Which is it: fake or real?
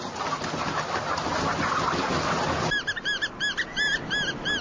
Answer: real